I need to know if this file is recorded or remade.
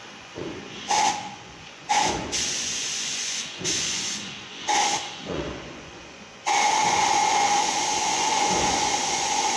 remade